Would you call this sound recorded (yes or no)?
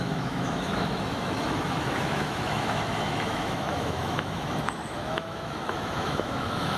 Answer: no